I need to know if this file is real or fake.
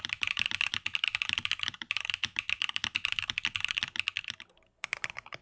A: real